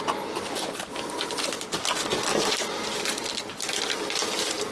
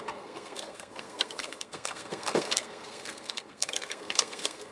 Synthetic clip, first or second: second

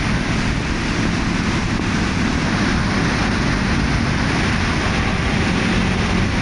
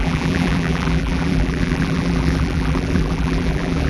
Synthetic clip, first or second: second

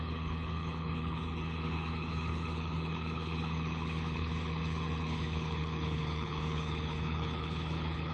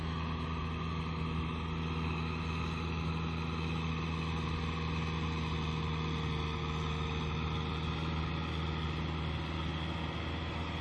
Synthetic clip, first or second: first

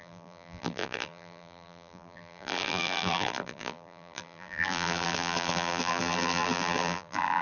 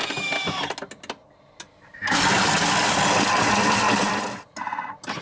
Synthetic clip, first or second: first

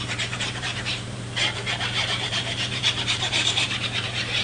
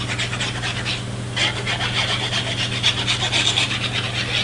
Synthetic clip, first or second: first